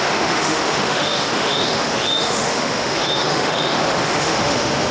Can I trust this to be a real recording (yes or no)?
no